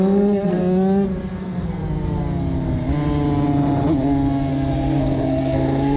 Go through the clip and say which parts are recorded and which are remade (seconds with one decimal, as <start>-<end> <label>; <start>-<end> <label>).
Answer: 0.0-0.6 remade; 0.6-1.4 recorded; 1.4-1.8 remade; 1.8-4.5 recorded; 4.5-6.0 remade